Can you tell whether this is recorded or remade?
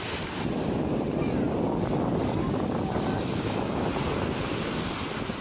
recorded